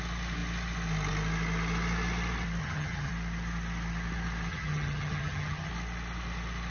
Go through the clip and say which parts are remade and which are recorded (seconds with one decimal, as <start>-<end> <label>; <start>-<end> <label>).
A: 0.0-2.6 recorded; 2.6-3.1 remade; 3.1-4.5 recorded; 4.5-5.7 remade; 5.7-6.7 recorded